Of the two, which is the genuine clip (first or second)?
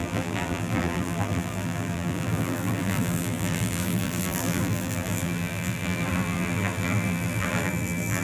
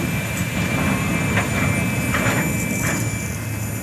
second